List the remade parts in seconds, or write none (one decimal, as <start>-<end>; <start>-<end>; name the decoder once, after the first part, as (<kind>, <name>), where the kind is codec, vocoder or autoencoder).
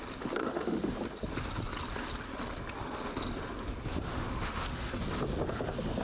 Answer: 0.4-0.9 (autoencoder, DAC-VAE); 3.9-4.9